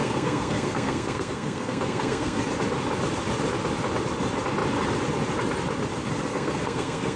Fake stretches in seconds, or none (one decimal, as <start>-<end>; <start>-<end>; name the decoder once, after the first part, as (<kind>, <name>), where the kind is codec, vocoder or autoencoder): 0.0-2.4 (codec, SNAC); 6.3-7.2